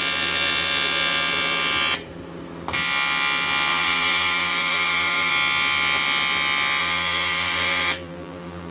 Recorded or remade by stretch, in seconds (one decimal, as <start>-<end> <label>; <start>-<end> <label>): 0.0-3.7 recorded; 3.7-5.3 remade; 5.3-6.8 recorded; 6.8-8.7 remade